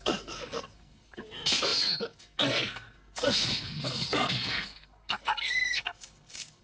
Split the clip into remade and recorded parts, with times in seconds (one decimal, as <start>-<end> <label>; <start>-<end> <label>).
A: 0.0-6.6 remade